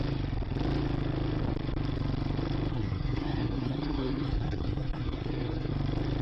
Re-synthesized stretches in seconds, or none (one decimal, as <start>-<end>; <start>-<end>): 2.7-5.7